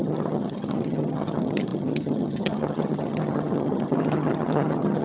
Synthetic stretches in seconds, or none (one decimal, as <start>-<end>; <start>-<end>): 0.0-5.0